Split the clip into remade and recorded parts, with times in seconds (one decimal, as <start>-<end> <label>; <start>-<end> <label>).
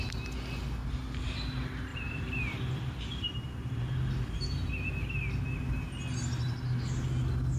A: 0.0-1.9 recorded; 1.9-4.7 remade; 4.7-7.6 recorded